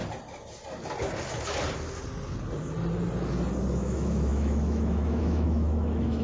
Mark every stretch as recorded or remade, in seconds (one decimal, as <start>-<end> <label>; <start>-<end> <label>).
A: 0.0-3.7 recorded; 3.7-6.2 remade